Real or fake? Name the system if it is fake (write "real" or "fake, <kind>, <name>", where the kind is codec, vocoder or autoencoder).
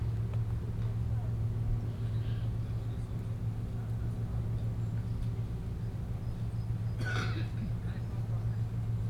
real